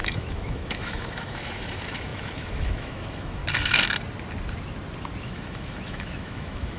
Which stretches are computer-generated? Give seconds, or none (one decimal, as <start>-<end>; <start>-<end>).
0.0-3.4; 5.2-6.8